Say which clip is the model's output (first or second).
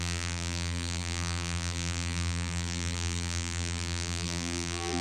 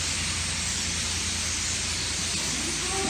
first